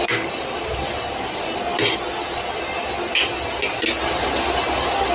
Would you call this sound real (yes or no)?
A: yes